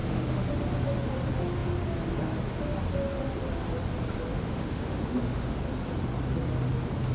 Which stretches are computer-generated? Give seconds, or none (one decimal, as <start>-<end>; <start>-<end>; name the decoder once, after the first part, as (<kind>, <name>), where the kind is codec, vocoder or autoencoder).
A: 0.0-0.5 (autoencoder, DAC-VAE); 4.3-5.6